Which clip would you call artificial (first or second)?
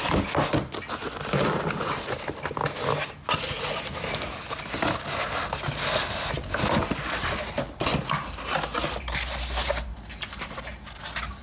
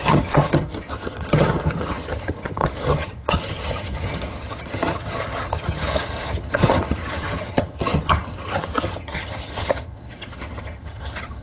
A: second